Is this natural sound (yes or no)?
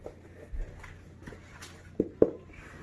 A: yes